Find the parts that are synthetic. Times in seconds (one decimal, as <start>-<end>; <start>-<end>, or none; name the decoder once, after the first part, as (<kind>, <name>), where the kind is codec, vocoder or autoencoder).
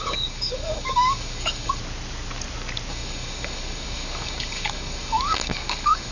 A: 0.0-1.8 (codec, DAC); 2.9-6.1